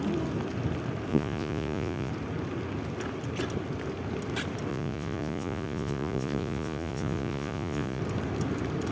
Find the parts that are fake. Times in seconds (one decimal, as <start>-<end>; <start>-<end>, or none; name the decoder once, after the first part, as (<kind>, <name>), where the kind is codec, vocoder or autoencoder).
1.1-2.1 (vocoder, Vocos); 4.7-8.0